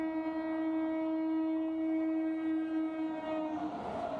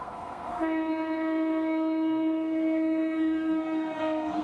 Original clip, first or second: first